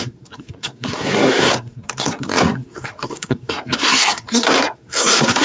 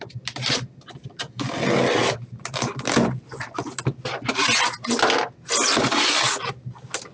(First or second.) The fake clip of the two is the first